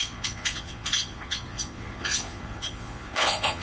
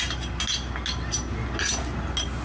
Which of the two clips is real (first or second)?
second